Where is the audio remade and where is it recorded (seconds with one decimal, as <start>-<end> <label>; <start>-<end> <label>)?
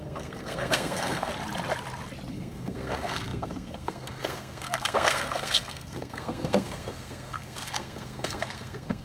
0.0-1.3 remade; 1.3-2.3 recorded; 2.3-9.0 remade